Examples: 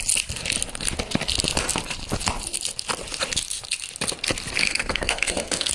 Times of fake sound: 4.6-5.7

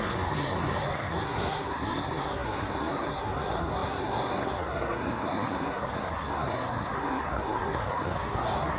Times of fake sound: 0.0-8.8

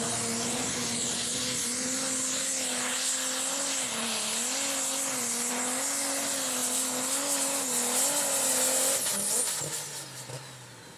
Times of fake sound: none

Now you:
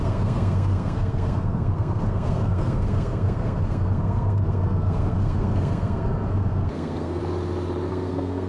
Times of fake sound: 0.0-7.2; 7.9-8.5